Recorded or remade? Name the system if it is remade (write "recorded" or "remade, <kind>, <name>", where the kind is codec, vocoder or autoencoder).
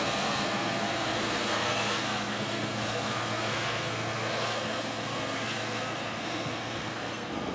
remade, codec, SNAC